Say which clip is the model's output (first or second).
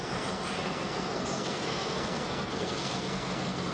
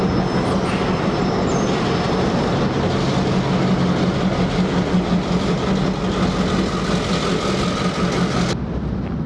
first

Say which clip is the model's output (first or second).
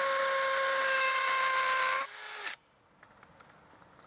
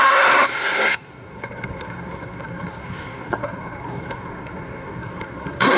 second